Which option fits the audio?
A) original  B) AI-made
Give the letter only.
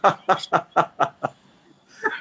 A